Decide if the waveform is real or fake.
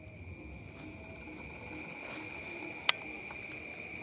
real